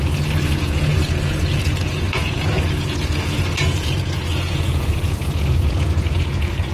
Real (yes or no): no